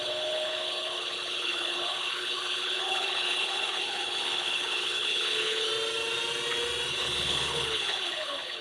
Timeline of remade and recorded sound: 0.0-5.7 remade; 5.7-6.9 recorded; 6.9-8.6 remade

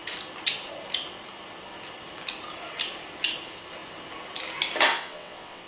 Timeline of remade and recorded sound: 0.0-4.9 recorded; 4.9-5.7 remade

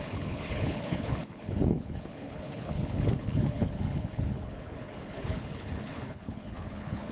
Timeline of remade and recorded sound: 0.0-7.1 remade

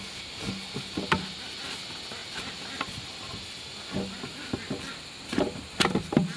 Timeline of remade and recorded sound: 0.0-6.4 recorded

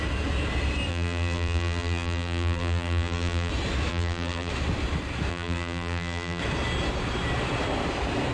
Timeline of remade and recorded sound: 0.0-0.9 recorded; 0.9-3.5 remade; 3.5-3.9 recorded; 3.9-4.5 remade; 4.5-5.3 recorded; 5.3-6.4 remade; 6.4-8.3 recorded

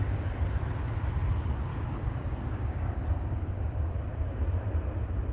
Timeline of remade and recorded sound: 0.0-1.7 recorded; 1.7-3.9 remade; 3.9-5.3 recorded